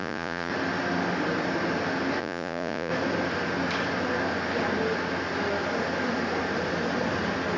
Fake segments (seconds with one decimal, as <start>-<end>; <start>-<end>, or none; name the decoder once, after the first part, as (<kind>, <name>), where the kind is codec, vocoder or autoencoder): 0.0-0.5 (vocoder, Vocos); 2.2-2.9